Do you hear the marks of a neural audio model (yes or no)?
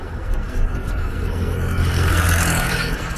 yes